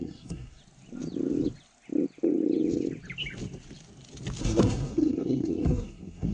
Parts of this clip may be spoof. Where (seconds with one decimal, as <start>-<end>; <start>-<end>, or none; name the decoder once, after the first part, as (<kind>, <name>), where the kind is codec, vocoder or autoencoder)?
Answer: 0.0-0.6 (codec, SNAC); 4.4-6.3